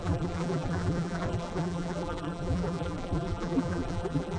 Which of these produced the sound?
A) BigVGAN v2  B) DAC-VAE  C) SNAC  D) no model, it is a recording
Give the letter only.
A